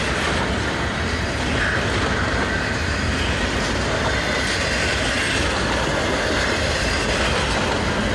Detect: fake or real real